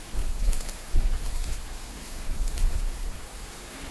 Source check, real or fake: fake